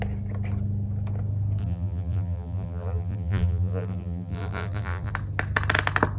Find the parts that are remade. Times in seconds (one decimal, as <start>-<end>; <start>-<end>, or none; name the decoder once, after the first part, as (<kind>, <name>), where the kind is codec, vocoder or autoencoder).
1.6-5.1 (vocoder, BigVGAN v2)